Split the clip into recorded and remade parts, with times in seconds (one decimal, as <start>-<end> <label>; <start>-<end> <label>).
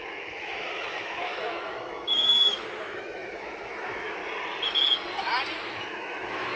0.0-4.2 remade; 4.2-5.7 recorded; 5.7-6.6 remade